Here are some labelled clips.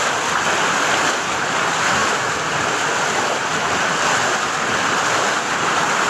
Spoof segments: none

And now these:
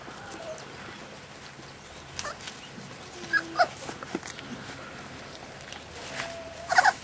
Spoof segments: none

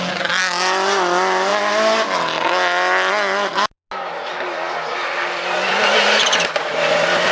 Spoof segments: none

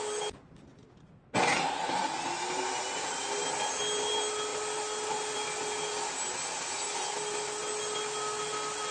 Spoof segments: none

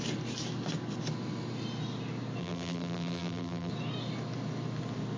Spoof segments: 2.4-3.7 (vocoder, BigVGAN v2)

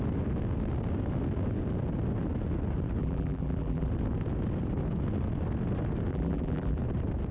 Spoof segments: 3.0-3.9 (vocoder, BigVGAN v2); 6.1-6.8